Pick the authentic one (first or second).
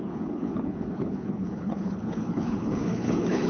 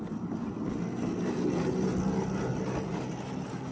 second